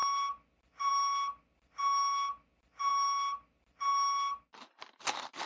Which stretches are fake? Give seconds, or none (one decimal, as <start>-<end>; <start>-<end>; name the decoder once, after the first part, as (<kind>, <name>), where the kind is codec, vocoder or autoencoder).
none